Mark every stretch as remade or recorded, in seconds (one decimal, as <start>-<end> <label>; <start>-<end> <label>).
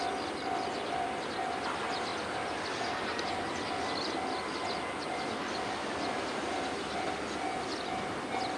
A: 0.0-8.6 recorded